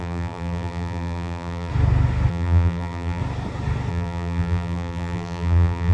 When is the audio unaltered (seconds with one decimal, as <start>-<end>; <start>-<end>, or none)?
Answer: 1.7-2.3; 3.2-3.9